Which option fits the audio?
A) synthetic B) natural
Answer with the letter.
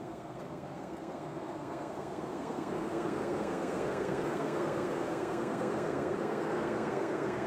A